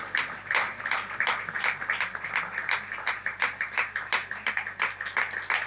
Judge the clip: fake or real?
real